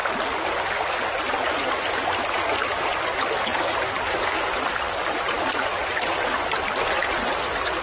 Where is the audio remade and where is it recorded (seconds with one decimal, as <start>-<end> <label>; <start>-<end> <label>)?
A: 0.0-3.5 recorded; 3.5-7.0 remade; 7.0-7.8 recorded